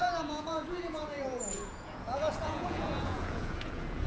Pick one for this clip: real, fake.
fake